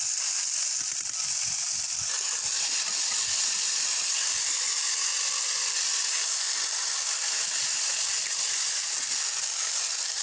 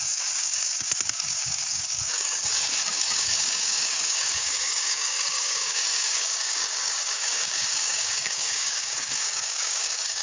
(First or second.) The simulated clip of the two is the second